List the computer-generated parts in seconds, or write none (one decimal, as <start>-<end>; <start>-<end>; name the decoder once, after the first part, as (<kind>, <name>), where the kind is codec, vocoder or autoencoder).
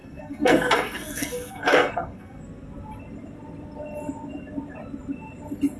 0.0-2.4 (codec, SNAC)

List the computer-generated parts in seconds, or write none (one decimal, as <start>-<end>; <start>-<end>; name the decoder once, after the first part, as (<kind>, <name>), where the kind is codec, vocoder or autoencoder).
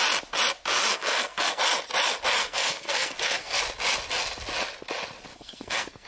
0.9-1.6 (codec, SNAC); 2.4-3.6; 5.3-6.1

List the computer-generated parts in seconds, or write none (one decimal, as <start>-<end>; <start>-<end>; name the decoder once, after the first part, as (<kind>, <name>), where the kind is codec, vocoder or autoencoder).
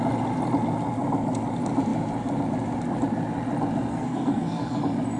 3.9-4.8 (codec, SNAC)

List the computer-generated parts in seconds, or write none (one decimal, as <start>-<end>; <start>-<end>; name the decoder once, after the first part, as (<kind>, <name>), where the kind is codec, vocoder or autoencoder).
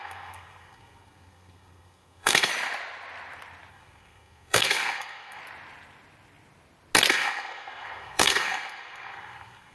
0.0-2.5 (codec, SNAC); 3.7-5.4; 7.1-9.7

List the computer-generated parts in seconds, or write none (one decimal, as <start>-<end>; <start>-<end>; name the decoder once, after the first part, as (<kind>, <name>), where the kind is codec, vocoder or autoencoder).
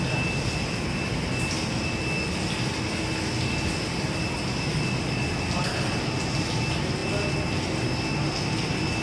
none